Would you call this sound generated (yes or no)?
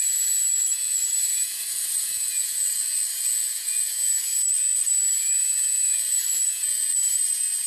yes